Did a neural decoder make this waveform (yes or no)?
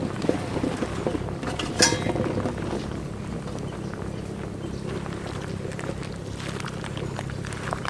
no